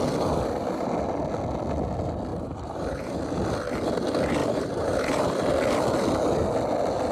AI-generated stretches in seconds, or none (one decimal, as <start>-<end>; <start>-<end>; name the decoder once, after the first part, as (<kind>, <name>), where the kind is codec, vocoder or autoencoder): 2.3-3.2 (vocoder, BigVGAN v2); 4.4-5.3